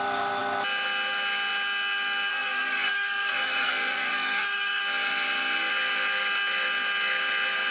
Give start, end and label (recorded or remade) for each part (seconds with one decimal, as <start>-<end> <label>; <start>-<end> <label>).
0.0-2.3 recorded; 2.3-4.8 remade; 4.8-7.7 recorded